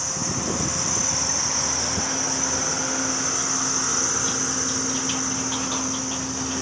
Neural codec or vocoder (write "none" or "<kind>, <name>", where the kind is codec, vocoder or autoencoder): none